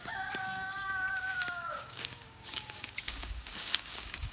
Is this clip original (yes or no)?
no